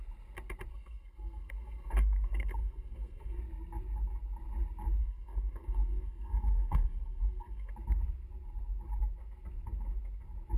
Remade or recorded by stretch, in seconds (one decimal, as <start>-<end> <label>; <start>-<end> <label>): 0.0-0.7 recorded; 0.7-3.4 remade; 3.4-5.0 recorded; 5.0-7.7 remade; 7.7-10.6 recorded

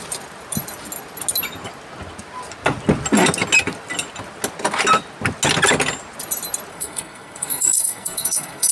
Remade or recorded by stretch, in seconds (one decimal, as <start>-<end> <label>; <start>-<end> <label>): 0.0-6.7 recorded; 6.7-8.7 remade

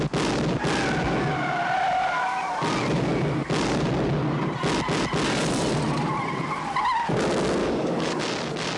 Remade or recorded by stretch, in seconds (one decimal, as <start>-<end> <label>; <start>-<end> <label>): 0.0-7.6 recorded; 7.6-8.2 remade; 8.2-8.8 recorded

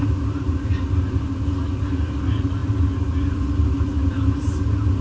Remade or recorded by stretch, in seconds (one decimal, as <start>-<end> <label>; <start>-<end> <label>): 0.0-5.0 recorded

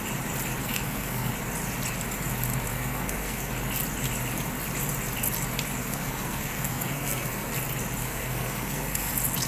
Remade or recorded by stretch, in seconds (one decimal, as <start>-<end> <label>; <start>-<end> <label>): 0.0-0.6 recorded; 0.6-1.3 remade; 1.3-2.7 recorded; 2.7-3.5 remade; 3.5-5.8 recorded; 5.8-7.5 remade; 7.5-8.0 recorded; 8.0-9.1 remade; 9.1-9.5 recorded